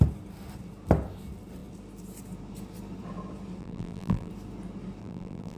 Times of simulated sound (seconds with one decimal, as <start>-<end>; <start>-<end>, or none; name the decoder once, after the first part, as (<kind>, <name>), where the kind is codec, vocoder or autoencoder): 3.6-4.3 (vocoder, BigVGAN v2); 5.0-5.6